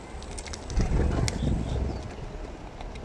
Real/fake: real